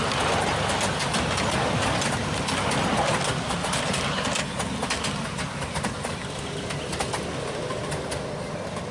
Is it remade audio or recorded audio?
recorded